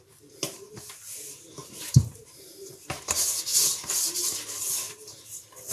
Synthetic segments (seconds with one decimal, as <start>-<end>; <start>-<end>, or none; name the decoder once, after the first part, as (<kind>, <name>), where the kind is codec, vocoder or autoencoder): 1.6-2.7 (vocoder, BigVGAN v2)